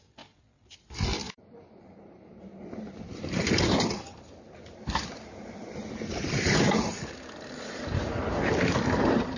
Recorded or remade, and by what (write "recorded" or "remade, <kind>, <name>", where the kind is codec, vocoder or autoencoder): remade, vocoder, BigVGAN v2